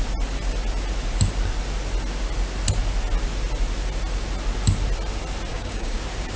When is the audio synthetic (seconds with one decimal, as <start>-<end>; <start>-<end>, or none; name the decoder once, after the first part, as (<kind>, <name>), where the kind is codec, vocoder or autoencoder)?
5.5-6.0 (codec, DAC)